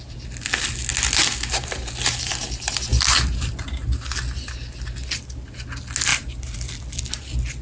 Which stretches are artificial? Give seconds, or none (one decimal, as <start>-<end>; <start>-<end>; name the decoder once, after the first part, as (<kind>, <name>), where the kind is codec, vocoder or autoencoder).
2.9-3.5 (vocoder, BigVGAN v2); 6.1-7.0